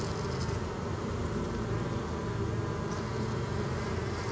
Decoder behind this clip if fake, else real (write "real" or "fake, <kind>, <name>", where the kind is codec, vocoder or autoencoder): real